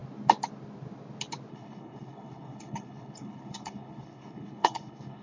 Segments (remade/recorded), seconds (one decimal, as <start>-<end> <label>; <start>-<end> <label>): 0.0-1.5 recorded; 1.5-5.2 remade

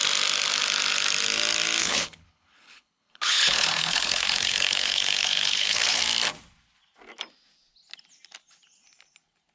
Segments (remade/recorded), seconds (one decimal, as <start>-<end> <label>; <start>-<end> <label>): 0.0-1.8 recorded; 1.8-6.0 remade; 6.0-9.5 recorded

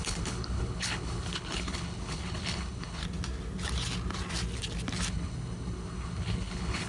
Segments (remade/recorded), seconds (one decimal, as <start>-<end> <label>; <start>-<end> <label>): 0.0-3.0 remade; 3.0-5.1 recorded; 5.1-6.9 remade

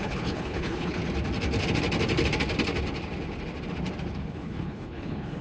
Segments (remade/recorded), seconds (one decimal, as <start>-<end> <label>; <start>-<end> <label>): 0.0-1.0 remade; 1.0-4.2 recorded; 4.2-5.4 remade

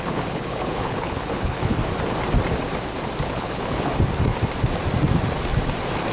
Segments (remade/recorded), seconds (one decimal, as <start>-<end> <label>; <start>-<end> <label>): 0.0-1.8 remade; 1.8-3.3 recorded; 3.3-3.9 remade; 3.9-6.1 recorded

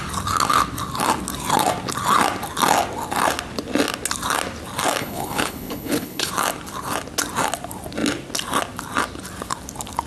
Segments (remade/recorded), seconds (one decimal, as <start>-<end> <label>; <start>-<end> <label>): 0.0-5.0 recorded; 5.0-6.3 remade; 6.3-10.1 recorded

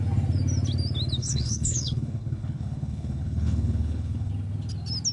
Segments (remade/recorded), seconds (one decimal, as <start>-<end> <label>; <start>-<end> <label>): 0.0-1.2 recorded; 1.2-4.3 remade; 4.3-5.1 recorded

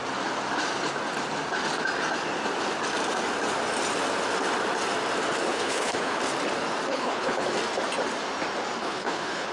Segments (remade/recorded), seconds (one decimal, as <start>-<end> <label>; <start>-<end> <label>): 0.0-5.5 recorded; 5.5-6.2 remade; 6.2-6.9 recorded; 6.9-7.5 remade; 7.5-8.8 recorded; 8.8-9.5 remade